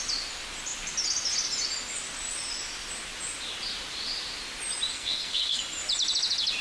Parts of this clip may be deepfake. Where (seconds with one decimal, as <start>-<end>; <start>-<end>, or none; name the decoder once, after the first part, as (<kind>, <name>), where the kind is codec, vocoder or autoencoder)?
4.9-5.6 (codec, SNAC)